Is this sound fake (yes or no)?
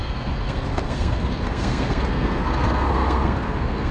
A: yes